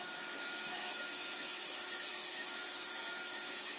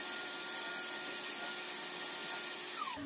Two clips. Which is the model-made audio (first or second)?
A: first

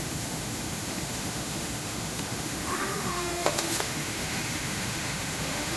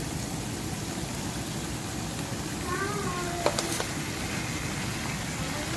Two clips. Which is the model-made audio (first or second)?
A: first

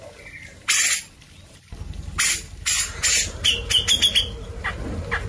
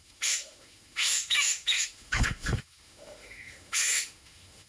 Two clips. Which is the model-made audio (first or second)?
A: second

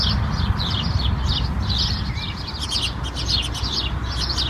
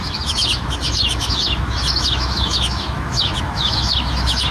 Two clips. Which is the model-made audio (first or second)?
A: second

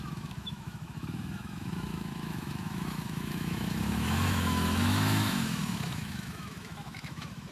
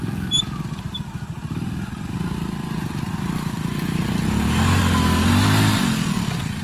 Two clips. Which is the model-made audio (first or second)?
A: first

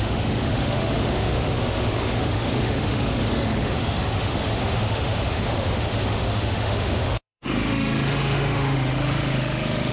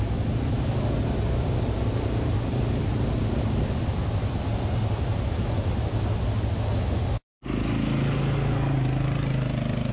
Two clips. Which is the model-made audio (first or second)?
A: first